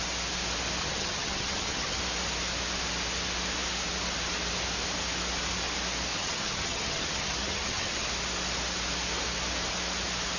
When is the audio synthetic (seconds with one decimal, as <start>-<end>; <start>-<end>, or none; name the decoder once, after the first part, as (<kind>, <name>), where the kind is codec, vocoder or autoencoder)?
0.8-2.0 (vocoder, HiFi-GAN); 6.1-8.1